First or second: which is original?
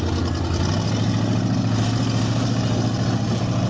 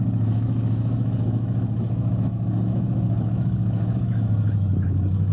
first